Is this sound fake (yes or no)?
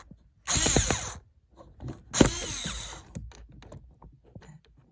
no